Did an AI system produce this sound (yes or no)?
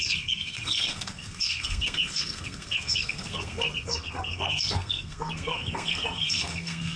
yes